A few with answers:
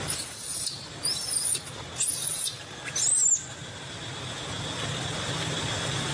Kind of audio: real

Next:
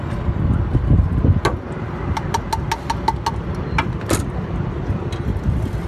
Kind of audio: real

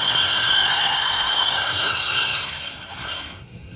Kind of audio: fake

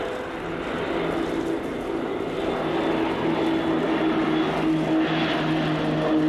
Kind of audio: real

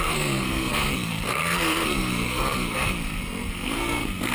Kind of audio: fake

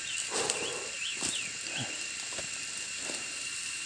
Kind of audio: real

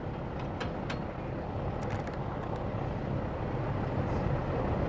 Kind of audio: real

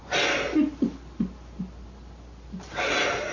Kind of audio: real